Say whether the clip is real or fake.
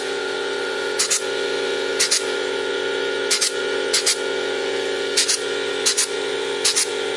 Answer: fake